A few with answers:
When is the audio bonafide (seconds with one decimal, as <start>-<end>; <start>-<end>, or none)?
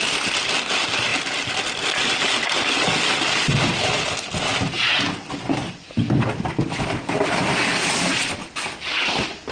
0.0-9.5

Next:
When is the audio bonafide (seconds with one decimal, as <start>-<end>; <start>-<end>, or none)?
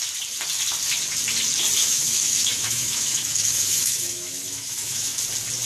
0.0-1.8; 5.2-5.7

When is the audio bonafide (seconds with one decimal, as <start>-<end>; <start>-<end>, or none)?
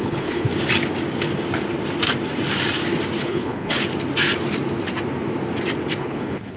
0.5-3.2; 3.8-6.0